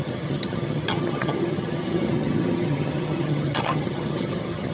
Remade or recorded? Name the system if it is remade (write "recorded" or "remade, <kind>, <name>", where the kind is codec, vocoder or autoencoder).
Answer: remade, vocoder, HiFi-GAN